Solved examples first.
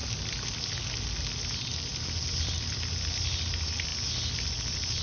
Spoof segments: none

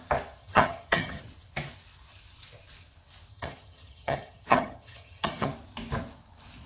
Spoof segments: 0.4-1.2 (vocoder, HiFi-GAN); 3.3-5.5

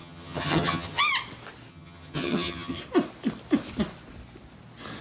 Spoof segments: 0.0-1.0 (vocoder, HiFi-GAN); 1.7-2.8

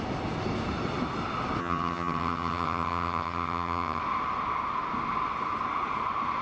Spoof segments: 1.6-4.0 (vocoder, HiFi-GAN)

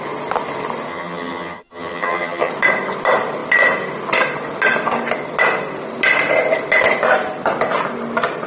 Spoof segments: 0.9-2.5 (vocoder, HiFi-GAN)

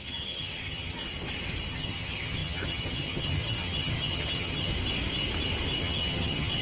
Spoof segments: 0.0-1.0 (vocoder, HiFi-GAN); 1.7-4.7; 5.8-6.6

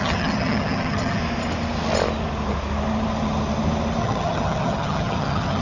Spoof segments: 0.0-1.2 (vocoder, HiFi-GAN); 4.0-5.6

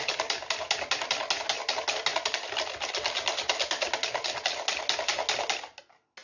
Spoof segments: none